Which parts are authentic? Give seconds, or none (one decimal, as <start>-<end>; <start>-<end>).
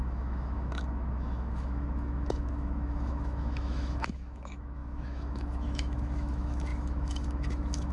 none